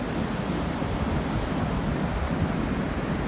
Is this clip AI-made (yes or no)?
no